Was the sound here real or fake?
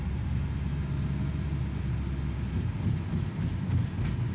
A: real